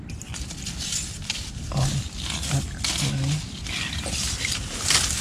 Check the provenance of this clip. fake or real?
real